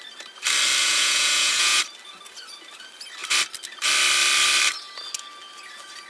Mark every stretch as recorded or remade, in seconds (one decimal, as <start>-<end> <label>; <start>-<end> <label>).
0.0-0.8 recorded; 0.8-1.8 remade; 1.8-6.1 recorded